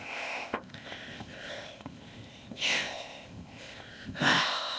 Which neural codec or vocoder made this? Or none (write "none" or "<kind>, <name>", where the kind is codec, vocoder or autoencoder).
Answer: codec, ZipCodec